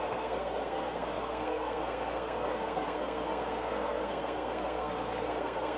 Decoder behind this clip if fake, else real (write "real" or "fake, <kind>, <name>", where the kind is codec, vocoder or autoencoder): fake, codec, SNAC